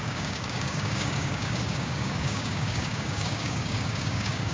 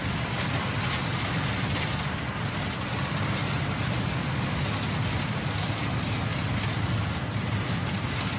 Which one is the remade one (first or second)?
first